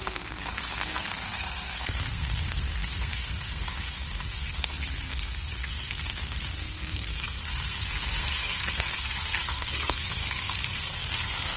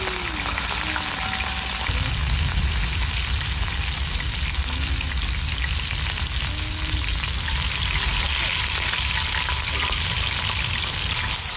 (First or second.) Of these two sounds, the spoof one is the first